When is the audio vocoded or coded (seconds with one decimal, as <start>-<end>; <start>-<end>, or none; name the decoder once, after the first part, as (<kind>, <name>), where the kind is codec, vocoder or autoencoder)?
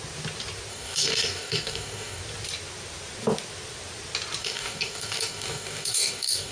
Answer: 0.7-2.2 (codec, DAC); 4.4-6.5